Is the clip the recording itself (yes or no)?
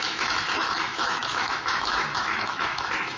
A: no